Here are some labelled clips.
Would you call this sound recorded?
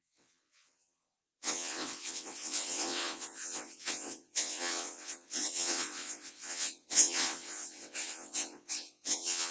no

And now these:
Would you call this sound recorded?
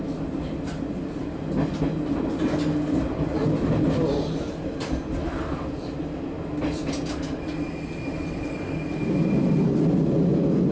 yes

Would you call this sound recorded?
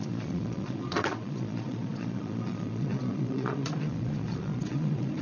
no